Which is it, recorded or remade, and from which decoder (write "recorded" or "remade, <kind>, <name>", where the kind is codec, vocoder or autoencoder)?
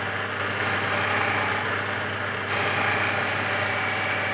recorded